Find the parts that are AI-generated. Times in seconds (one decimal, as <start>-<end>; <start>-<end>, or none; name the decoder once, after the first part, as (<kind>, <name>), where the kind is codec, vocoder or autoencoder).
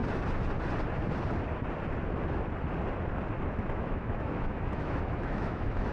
3.5-5.9 (autoencoder, DAC-VAE)